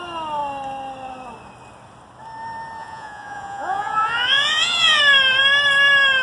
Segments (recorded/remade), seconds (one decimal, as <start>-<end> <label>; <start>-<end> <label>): 0.0-2.8 recorded; 2.8-5.0 remade; 5.0-6.2 recorded